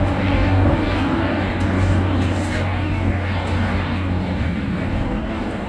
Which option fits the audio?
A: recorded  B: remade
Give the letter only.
B